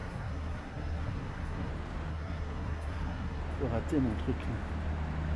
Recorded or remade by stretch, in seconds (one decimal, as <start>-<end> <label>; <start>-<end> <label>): 0.0-1.7 remade; 1.7-2.1 recorded; 2.1-3.4 remade; 3.4-5.4 recorded